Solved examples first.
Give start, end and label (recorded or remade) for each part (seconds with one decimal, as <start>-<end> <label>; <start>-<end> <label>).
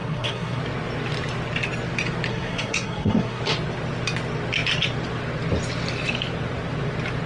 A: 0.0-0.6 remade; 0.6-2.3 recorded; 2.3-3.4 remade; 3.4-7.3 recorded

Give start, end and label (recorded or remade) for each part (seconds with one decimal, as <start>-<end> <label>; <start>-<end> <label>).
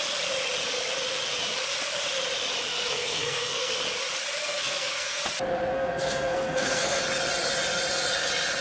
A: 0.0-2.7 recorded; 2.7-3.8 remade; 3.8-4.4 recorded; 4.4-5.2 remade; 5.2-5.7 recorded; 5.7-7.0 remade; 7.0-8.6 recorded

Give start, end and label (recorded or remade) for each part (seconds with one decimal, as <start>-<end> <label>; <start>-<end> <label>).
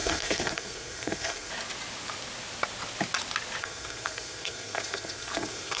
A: 0.0-1.5 remade; 1.5-3.6 recorded; 3.6-5.8 remade